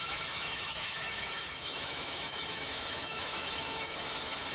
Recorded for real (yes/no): no